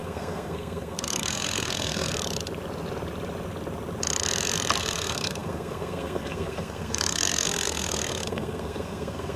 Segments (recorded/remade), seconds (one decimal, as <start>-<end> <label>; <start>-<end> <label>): 0.0-2.1 remade; 2.1-4.8 recorded; 4.8-9.4 remade